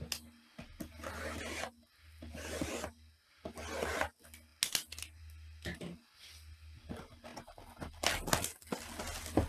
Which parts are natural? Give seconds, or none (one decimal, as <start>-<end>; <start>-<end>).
0.0-9.5